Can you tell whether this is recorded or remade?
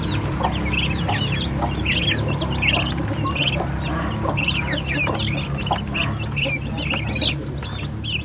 recorded